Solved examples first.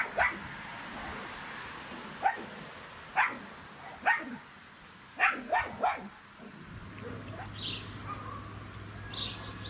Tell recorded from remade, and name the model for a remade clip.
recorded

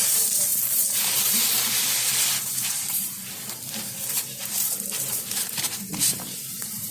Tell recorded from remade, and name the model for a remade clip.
remade, vocoder, BigVGAN v2